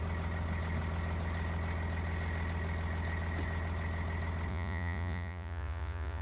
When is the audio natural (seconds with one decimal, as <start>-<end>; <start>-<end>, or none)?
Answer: 0.0-4.5

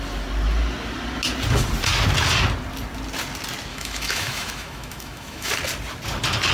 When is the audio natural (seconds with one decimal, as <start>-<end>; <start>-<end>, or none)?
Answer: 0.0-3.7; 5.5-6.5